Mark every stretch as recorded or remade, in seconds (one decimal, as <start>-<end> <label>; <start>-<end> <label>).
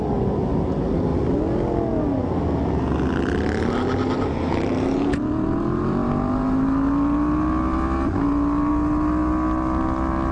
0.0-10.3 recorded